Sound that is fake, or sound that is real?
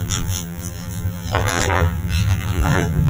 fake